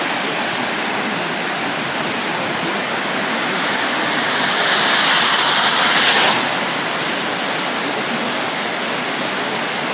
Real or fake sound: real